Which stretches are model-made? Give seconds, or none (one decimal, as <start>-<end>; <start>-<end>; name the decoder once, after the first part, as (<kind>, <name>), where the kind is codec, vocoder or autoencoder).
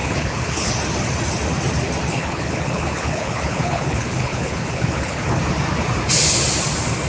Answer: 0.0-0.7 (codec, HILCodec); 2.1-5.4